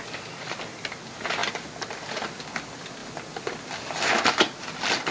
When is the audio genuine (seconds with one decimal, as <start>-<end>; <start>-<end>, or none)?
0.0-5.1